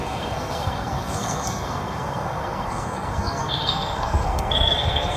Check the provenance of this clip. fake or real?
fake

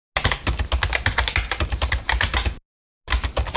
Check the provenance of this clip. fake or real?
real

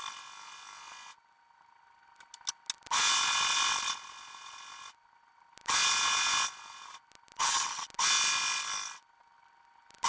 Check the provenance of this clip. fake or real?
real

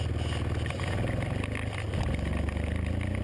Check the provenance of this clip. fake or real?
real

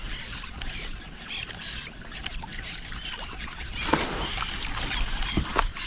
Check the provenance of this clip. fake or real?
real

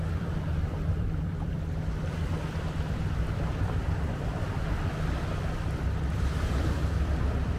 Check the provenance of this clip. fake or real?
fake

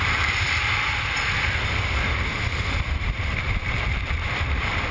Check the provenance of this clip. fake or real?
fake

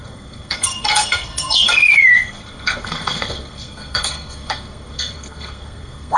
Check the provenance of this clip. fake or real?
fake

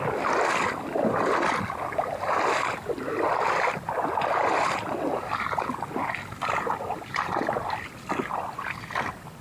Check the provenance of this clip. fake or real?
real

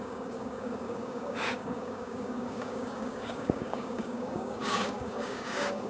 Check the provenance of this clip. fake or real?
fake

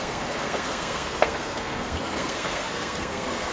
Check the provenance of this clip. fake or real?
fake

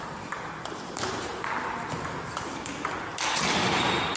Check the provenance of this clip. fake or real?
real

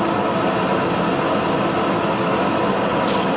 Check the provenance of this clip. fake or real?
real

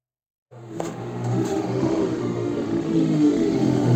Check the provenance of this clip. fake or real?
fake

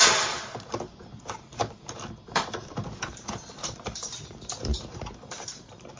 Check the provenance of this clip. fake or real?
fake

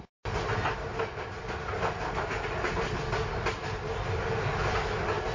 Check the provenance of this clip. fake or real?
real